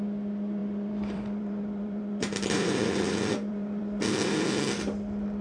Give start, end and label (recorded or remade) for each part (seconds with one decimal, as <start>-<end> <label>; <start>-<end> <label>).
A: 0.0-0.6 recorded; 0.6-3.8 remade; 3.8-5.4 recorded